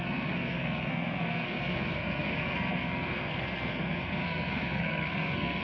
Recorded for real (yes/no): no